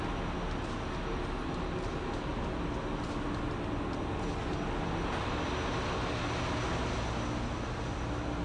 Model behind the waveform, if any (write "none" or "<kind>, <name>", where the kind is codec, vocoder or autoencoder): none